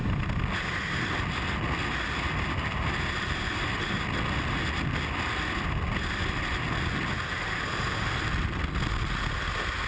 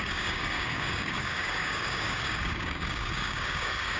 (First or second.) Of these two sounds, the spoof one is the second